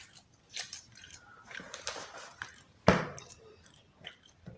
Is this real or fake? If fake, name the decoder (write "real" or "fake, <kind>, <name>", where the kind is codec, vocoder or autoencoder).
fake, vocoder, BigVGAN v2